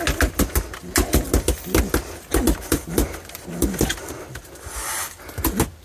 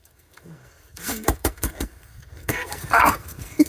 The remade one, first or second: second